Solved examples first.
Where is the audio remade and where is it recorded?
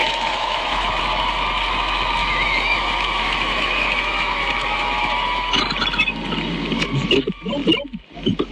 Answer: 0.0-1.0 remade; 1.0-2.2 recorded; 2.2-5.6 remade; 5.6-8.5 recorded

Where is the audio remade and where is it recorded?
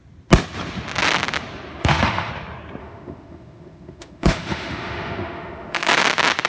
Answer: 0.0-1.8 recorded; 1.8-2.3 remade; 2.3-2.8 recorded; 2.8-5.9 remade; 5.9-6.5 recorded